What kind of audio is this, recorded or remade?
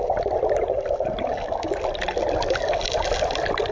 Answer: recorded